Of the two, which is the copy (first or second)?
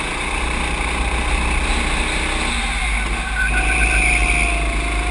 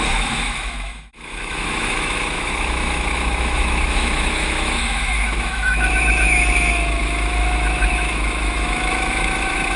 second